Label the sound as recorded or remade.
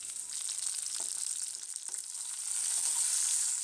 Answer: recorded